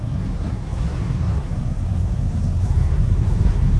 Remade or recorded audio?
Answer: remade